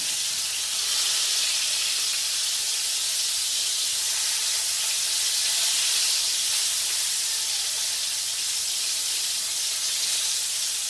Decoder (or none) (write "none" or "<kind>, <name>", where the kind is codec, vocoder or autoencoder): none